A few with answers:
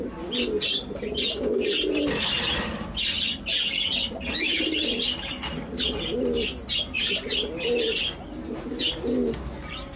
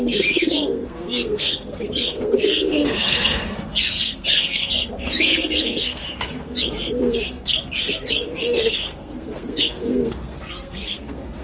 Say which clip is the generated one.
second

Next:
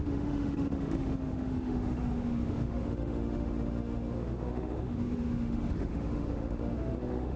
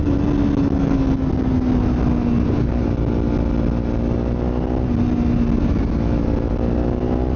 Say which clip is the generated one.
first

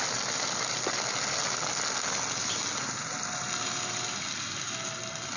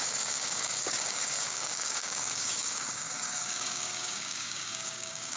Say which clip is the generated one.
second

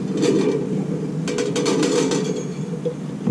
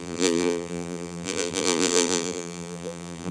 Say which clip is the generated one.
second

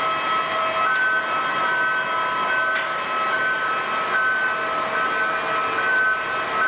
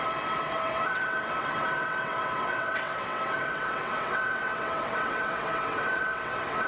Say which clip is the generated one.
second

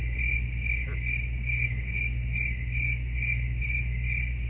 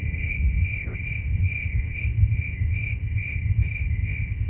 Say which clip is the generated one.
second